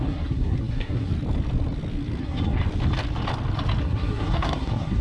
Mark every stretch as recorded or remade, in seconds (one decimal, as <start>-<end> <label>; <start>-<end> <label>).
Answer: 0.0-1.1 remade; 1.1-2.2 recorded; 2.2-2.6 remade; 2.6-3.8 recorded; 3.8-5.0 remade